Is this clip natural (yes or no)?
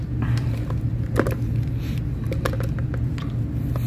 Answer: yes